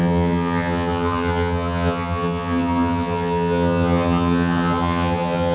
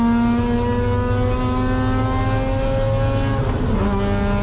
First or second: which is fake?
first